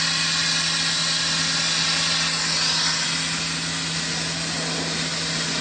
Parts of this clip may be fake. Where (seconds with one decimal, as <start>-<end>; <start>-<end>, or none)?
none